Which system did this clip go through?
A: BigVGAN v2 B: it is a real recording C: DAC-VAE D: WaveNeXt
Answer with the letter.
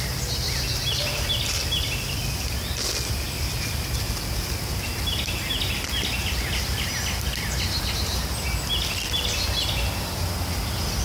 B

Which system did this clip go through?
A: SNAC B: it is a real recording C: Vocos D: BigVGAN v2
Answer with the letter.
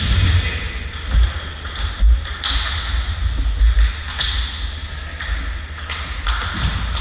B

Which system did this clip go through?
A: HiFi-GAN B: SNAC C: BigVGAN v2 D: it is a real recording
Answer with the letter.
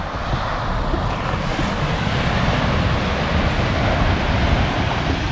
D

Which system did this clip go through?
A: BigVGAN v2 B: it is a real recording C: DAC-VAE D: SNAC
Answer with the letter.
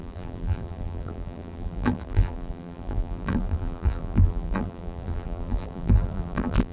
A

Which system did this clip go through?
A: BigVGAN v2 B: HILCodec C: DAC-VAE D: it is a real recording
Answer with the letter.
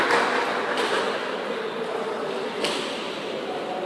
D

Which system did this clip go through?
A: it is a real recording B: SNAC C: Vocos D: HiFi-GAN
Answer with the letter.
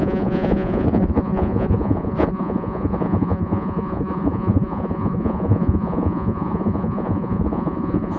C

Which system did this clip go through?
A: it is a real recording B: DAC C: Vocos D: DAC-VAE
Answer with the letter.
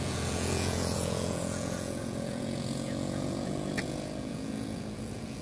C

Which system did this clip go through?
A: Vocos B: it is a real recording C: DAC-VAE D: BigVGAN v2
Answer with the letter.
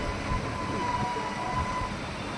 B